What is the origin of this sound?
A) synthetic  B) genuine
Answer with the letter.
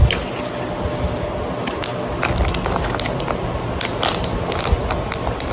B